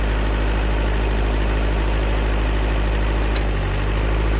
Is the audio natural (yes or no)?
yes